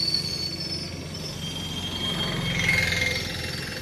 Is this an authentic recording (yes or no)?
yes